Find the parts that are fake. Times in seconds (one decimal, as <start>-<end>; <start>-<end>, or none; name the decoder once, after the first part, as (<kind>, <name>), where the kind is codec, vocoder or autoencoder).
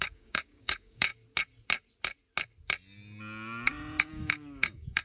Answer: 0.0-1.1 (codec, DAC); 4.1-5.0